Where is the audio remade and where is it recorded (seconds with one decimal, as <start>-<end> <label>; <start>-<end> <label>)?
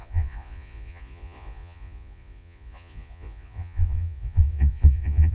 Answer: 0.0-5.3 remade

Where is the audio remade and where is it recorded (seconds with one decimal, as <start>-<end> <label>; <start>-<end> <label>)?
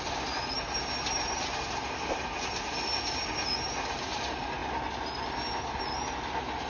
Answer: 0.0-6.7 recorded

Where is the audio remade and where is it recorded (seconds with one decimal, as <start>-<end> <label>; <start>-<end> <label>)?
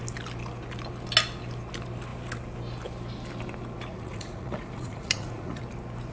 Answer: 0.0-3.9 recorded; 3.9-5.6 remade; 5.6-6.1 recorded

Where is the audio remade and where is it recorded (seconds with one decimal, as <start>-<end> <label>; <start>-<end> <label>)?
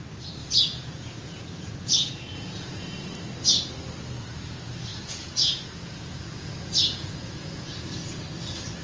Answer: 0.0-0.4 recorded; 0.4-3.0 remade; 3.0-4.9 recorded; 4.9-8.2 remade; 8.2-8.8 recorded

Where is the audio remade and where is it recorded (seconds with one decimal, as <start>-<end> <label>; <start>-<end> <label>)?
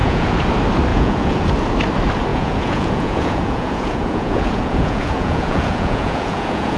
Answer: 0.0-0.5 remade; 0.5-0.9 recorded; 0.9-1.5 remade; 1.5-2.3 recorded; 2.3-6.8 remade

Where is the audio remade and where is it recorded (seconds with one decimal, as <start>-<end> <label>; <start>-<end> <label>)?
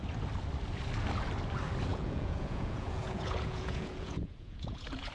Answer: 0.0-1.9 recorded; 1.9-5.1 remade